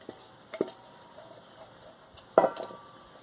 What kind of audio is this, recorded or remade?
remade